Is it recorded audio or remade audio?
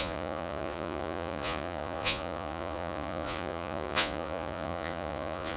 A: remade